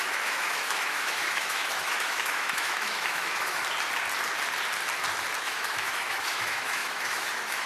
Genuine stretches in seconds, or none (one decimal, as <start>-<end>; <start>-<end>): 3.6-5.4